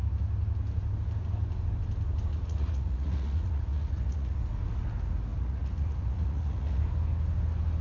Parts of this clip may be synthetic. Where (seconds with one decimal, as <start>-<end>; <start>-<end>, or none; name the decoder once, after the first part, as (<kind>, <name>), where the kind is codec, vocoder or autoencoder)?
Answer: 2.3-4.4 (vocoder, Vocos); 5.3-6.8